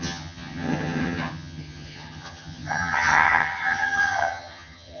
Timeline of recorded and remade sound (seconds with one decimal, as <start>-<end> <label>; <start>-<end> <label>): 0.0-5.0 remade